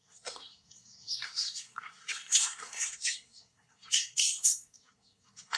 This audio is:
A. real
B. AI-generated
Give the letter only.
B